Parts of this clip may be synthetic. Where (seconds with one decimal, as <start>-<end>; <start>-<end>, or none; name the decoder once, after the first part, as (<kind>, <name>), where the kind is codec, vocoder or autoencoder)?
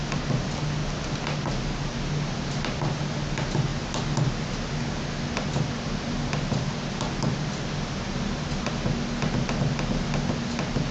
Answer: none